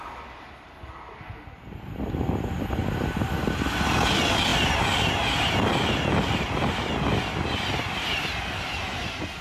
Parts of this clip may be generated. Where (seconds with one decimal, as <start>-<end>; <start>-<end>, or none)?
none